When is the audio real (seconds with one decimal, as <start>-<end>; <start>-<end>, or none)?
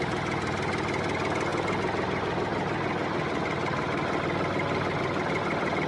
0.0-5.9